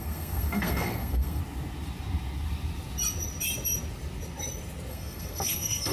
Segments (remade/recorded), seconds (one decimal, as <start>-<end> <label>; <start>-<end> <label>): 0.0-1.4 remade; 1.4-4.9 recorded; 4.9-5.9 remade